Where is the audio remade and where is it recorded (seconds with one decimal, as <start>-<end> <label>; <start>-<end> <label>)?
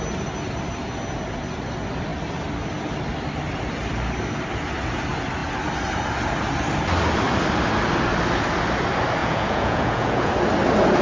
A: 0.0-9.2 recorded; 9.2-10.3 remade; 10.3-11.0 recorded